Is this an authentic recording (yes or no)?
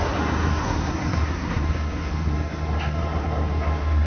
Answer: no